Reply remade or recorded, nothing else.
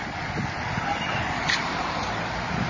recorded